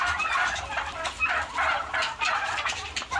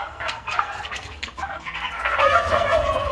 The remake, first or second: second